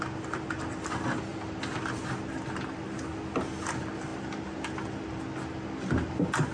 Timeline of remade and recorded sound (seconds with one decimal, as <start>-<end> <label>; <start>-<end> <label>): 0.0-6.5 recorded